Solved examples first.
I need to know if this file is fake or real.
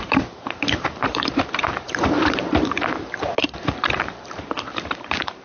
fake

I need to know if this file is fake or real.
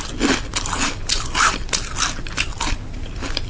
fake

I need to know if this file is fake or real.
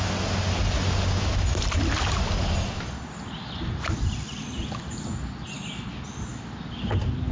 real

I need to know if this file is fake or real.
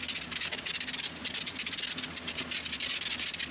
real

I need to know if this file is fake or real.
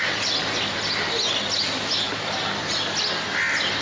real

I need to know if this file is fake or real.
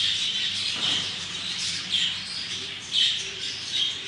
fake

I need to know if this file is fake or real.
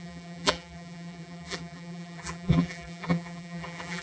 fake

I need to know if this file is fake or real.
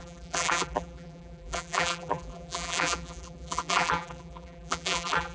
fake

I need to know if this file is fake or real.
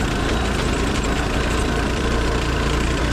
fake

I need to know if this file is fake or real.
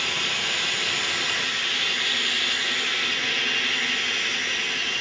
real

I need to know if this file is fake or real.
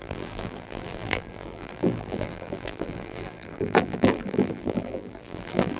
fake